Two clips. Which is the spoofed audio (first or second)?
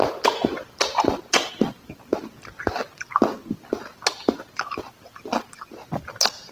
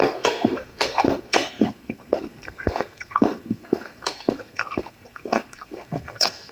second